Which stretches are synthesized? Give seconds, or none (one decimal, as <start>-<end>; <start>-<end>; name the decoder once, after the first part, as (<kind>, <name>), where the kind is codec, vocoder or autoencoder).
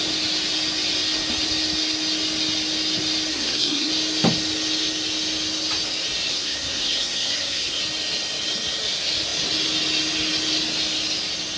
3.3-3.9 (codec, SNAC); 6.3-7.8